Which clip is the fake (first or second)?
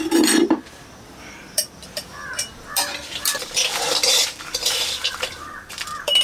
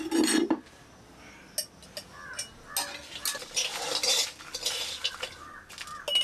first